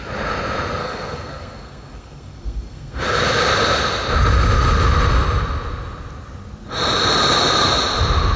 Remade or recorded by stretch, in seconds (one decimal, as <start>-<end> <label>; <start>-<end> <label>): 0.0-0.8 recorded; 0.8-3.0 remade; 3.0-8.4 recorded